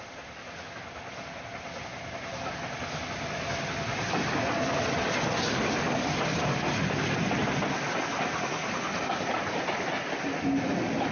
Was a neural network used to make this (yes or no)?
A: no